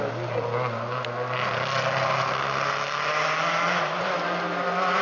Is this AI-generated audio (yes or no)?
no